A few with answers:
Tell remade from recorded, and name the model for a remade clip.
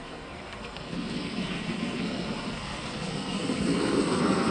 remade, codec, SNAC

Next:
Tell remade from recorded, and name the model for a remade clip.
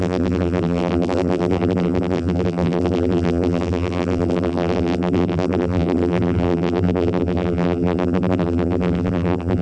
remade, vocoder, BigVGAN v2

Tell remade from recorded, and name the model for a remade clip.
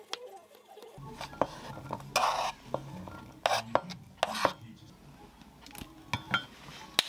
recorded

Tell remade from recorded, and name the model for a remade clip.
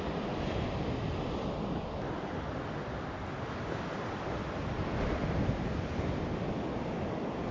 recorded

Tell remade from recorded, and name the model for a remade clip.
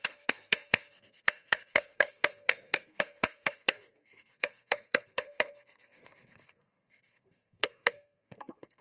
remade, codec, SNAC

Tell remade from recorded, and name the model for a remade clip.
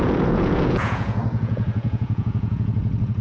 remade, vocoder, Vocos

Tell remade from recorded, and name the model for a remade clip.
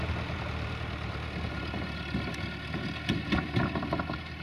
recorded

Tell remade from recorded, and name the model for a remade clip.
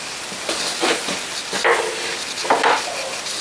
recorded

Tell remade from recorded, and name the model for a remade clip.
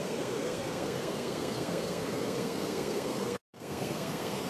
remade, codec, SNAC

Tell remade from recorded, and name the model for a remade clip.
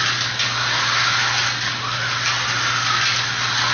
recorded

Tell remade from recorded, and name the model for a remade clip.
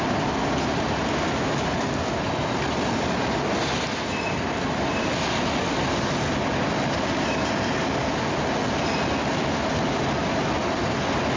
recorded